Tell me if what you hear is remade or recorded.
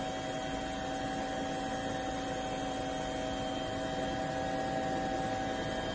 recorded